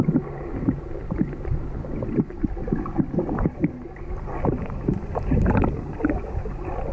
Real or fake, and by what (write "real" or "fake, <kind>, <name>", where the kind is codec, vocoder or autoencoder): real